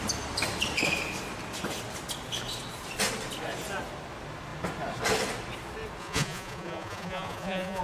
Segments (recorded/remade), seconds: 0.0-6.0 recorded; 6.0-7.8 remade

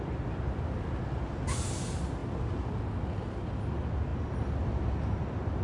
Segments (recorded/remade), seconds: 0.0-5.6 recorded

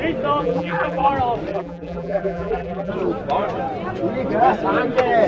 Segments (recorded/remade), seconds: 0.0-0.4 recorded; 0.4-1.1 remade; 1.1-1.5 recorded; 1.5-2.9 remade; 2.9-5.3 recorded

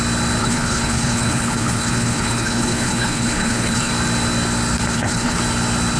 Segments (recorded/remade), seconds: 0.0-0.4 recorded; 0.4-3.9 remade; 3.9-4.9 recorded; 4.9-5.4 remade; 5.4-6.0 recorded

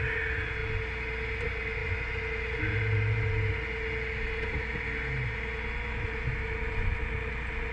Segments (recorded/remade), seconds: 0.0-7.7 recorded